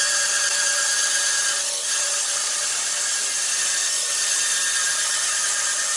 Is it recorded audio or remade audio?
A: remade